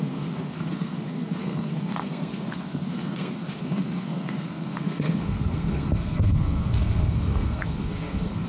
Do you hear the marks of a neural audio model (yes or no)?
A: yes